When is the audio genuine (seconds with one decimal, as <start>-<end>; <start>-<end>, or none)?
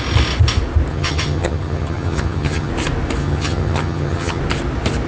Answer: 0.0-0.9; 2.7-3.2; 4.4-5.1